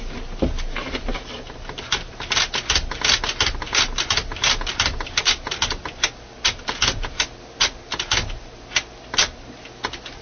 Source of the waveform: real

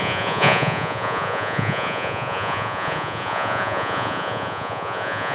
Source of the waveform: fake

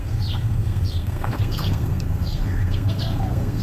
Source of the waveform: fake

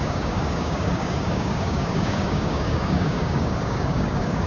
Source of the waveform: fake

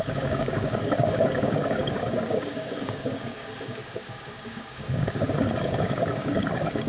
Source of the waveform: fake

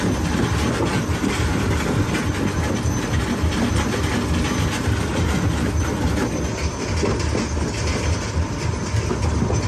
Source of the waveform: real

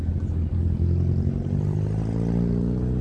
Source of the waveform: real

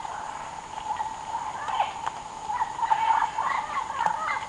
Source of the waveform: real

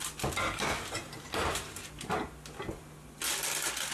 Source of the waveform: real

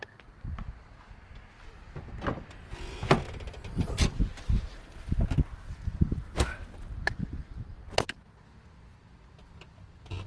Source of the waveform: real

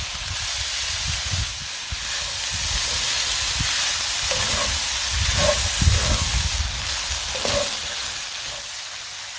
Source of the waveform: real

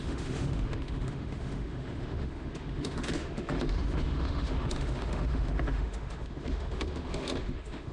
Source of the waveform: fake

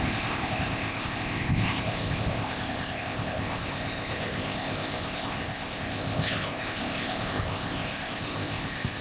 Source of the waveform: fake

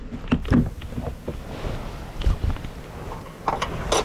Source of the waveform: real